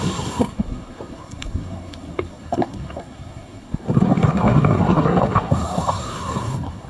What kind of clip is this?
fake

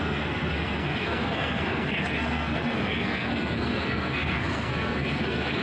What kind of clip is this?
fake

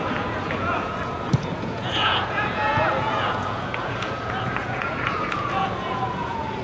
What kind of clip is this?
fake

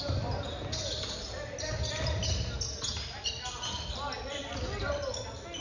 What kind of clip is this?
real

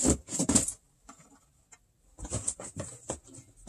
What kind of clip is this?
real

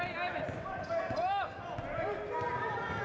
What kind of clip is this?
real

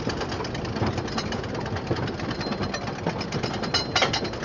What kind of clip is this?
real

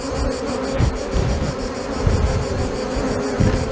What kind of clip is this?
real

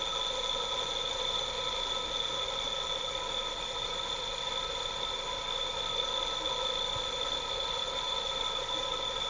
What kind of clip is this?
real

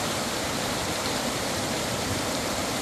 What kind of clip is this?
fake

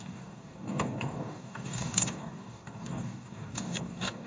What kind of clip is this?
fake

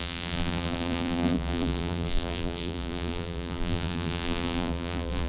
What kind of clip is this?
fake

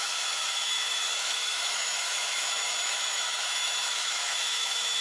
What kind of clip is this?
fake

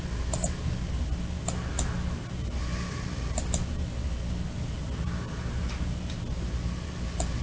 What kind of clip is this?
real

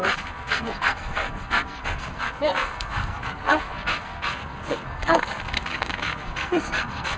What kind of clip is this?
fake